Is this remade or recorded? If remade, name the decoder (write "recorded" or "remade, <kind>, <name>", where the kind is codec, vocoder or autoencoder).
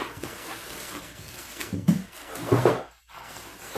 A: remade, codec, SNAC